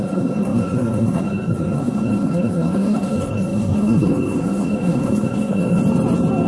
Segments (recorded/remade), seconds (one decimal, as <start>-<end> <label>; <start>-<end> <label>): 0.0-5.8 remade; 5.8-6.5 recorded